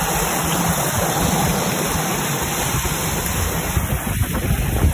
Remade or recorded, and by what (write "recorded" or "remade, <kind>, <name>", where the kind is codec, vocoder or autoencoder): recorded